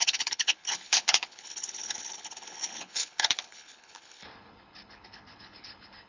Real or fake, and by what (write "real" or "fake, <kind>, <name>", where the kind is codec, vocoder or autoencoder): fake, codec, HILCodec